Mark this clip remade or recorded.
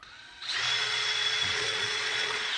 remade